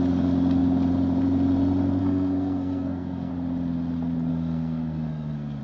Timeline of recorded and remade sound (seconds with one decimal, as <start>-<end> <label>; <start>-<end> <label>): 0.0-2.0 recorded; 2.0-3.3 remade; 3.3-4.3 recorded; 4.3-5.6 remade